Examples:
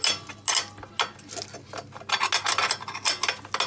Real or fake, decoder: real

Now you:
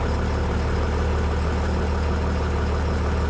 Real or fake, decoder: real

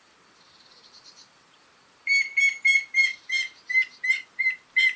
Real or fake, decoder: fake, vocoder, BigVGAN v2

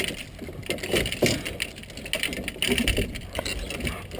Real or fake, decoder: real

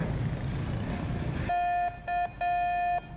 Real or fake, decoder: real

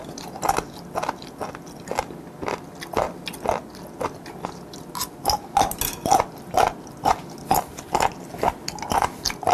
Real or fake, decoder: real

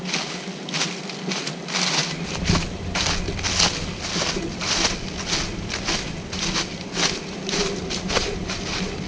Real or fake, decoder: real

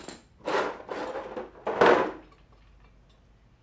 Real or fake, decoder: real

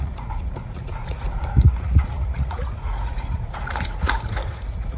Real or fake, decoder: fake, vocoder, Vocos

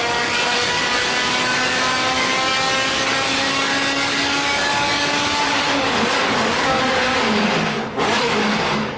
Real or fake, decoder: fake, codec, DAC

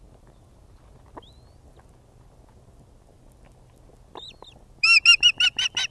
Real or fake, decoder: real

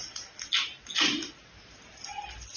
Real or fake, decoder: real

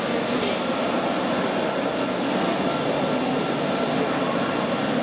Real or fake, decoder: real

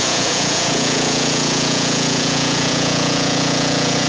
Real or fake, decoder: fake, vocoder, Vocos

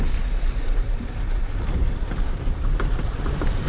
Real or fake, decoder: real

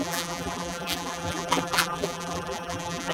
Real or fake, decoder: fake, vocoder, BigVGAN v2